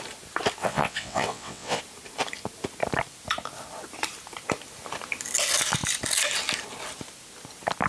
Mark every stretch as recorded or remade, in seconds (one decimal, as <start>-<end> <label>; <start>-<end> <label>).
0.0-0.6 recorded; 0.6-1.8 remade; 1.8-7.9 recorded